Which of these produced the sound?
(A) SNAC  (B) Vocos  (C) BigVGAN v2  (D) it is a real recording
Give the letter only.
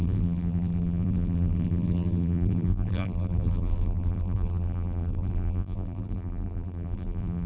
C